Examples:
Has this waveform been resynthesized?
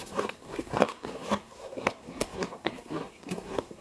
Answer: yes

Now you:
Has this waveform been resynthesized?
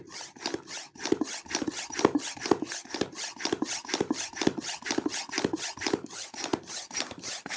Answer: no